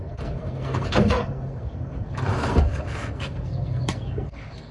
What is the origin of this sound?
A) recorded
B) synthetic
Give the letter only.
B